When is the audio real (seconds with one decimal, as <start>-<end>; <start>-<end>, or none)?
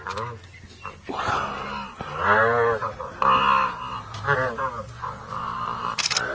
0.0-6.3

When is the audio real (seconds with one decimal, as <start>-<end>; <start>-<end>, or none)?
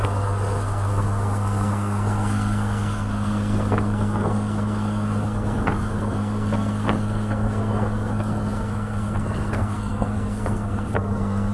none